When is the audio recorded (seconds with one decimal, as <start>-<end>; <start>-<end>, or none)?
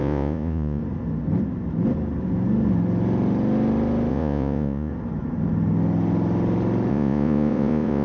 0.8-4.1; 4.9-6.9